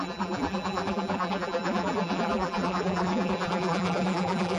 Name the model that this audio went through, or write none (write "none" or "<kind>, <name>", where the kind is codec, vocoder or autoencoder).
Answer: vocoder, BigVGAN v2